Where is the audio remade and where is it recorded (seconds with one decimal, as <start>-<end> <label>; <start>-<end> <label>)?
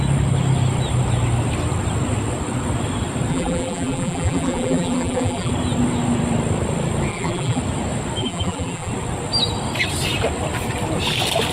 0.0-3.3 recorded; 3.3-5.5 remade; 5.5-7.1 recorded; 7.1-7.6 remade; 7.6-8.2 recorded; 8.2-8.9 remade; 8.9-11.5 recorded